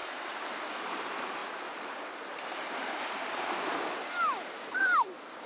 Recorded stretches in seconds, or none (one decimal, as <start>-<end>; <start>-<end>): 0.6-5.5